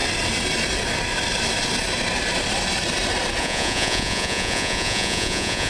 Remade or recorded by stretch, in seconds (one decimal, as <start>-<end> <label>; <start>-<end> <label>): 0.0-3.4 recorded; 3.4-5.7 remade